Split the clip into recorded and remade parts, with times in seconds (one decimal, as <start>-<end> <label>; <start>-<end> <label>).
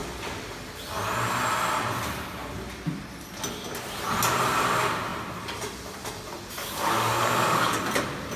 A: 0.0-6.6 recorded; 6.6-7.8 remade; 7.8-8.4 recorded